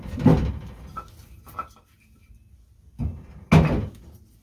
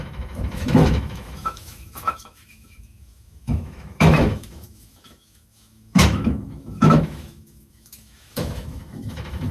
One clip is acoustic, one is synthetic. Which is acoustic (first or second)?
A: first